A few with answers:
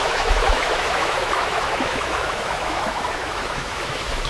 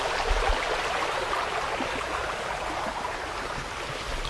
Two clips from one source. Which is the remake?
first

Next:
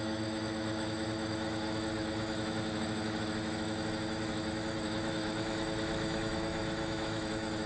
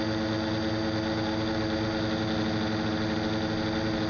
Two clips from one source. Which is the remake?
first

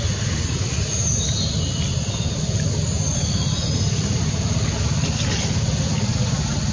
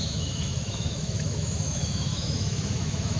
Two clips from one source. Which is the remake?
second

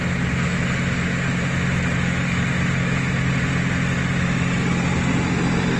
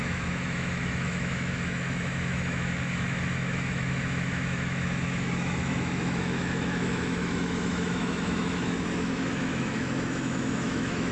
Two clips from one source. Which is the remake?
second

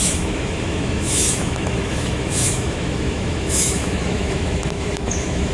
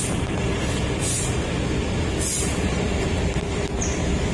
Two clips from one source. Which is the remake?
first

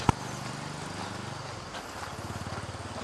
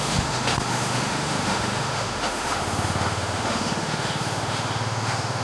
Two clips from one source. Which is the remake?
second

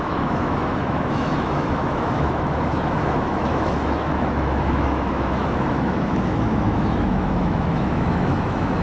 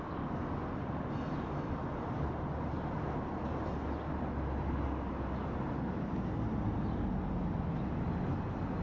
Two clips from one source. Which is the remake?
first